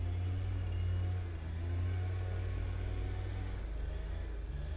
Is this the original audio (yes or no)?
yes